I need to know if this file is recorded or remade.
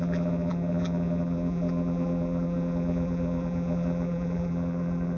remade